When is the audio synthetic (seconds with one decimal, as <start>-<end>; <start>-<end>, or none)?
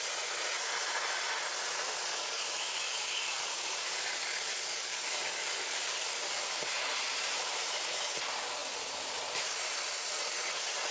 2.1-6.6